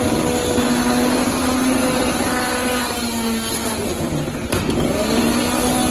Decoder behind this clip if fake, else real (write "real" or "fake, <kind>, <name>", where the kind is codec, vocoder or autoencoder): real